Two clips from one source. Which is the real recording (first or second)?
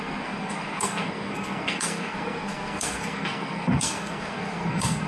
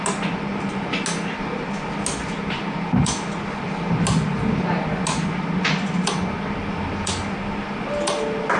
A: second